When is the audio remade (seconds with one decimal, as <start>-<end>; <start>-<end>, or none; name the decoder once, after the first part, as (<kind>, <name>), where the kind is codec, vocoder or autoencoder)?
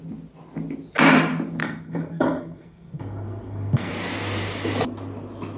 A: 1.6-3.9 (codec, SNAC)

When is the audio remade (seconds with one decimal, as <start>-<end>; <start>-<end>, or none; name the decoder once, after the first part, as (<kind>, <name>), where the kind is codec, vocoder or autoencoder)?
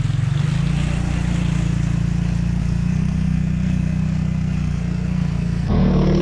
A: 2.6-6.2 (codec, SNAC)